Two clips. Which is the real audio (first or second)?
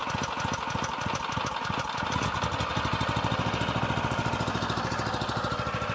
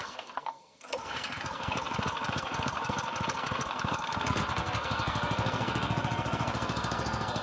first